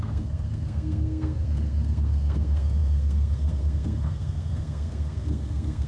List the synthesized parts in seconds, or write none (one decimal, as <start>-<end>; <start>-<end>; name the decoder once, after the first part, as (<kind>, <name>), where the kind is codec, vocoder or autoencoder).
0.0-5.9 (codec, SNAC)